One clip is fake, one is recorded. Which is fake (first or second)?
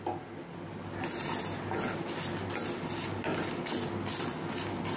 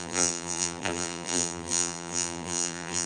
second